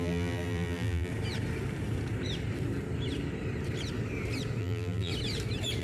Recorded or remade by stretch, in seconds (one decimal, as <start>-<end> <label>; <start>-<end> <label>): 0.0-1.1 remade; 1.1-4.6 recorded; 4.6-5.1 remade; 5.1-5.8 recorded